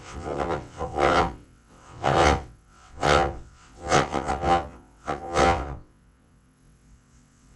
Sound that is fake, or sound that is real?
fake